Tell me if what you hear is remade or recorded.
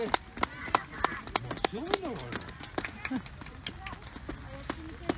recorded